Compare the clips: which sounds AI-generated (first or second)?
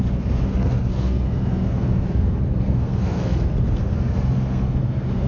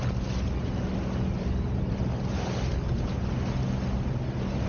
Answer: first